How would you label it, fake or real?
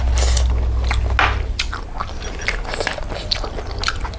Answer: real